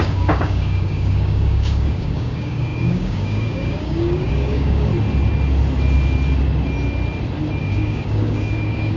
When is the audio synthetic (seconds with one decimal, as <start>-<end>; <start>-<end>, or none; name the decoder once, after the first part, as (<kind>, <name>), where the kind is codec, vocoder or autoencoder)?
0.0-4.9 (codec, DAC); 7.6-9.0